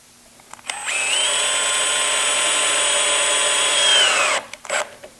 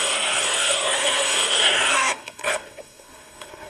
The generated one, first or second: second